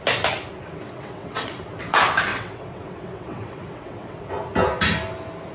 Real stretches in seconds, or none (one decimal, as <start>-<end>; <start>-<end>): 0.0-0.8; 1.5-2.3; 4.3-5.5

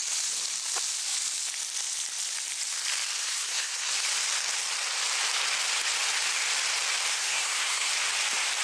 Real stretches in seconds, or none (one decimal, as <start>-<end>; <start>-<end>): 0.0-3.2; 3.9-7.1; 7.9-8.6

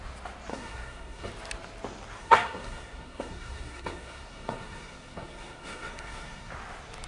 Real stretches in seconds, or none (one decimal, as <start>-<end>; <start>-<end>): 0.0-0.5; 1.3-2.2; 6.5-7.1